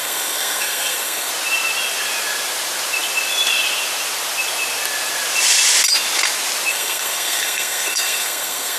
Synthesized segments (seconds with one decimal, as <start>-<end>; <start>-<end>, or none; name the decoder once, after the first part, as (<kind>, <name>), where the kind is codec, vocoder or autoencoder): 0.0-1.3 (codec, SNAC); 6.7-8.8

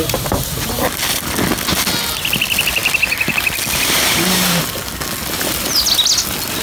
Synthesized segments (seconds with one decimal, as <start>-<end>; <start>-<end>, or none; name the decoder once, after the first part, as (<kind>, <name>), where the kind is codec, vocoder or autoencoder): none

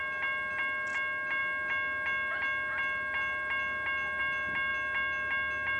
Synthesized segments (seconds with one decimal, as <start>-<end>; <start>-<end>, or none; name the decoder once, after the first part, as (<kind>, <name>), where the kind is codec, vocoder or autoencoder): none

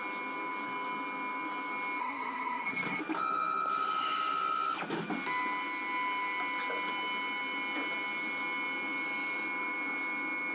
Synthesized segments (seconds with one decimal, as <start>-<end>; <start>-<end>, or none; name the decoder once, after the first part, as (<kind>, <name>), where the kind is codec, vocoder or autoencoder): 2.0-3.0 (codec, SNAC)